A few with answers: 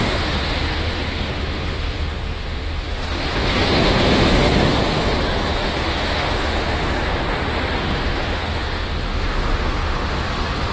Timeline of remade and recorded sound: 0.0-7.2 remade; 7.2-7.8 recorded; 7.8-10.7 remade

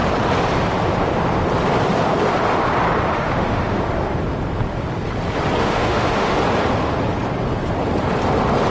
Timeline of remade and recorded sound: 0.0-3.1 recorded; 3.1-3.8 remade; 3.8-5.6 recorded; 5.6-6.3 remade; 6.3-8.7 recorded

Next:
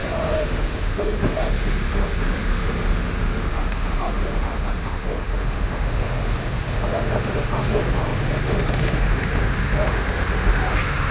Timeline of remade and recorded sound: 0.0-11.1 remade